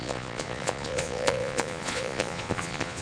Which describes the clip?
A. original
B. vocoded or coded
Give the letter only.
B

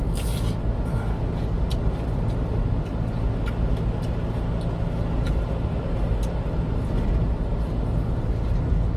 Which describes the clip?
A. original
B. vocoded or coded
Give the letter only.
A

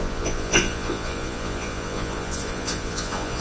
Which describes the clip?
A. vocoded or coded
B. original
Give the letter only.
A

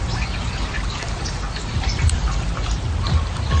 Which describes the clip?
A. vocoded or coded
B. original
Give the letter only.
B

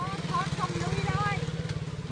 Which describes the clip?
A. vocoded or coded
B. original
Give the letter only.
B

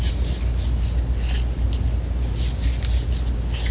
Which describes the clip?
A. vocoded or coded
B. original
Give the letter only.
B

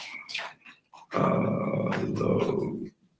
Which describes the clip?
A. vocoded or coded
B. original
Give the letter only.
B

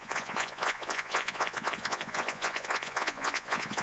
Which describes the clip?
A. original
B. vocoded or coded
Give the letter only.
B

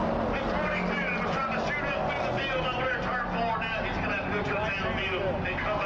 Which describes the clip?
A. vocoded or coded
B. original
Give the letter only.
B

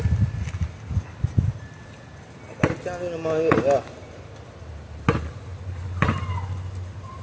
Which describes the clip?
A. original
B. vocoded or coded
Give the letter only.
A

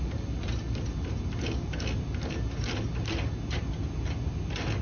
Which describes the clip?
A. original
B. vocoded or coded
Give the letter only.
A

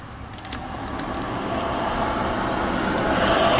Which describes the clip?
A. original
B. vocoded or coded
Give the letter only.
A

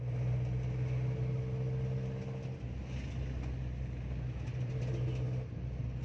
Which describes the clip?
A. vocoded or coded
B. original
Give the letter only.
B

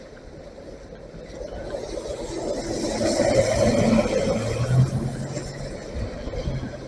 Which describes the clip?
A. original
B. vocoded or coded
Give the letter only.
A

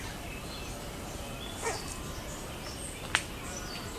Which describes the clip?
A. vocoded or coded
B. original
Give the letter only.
B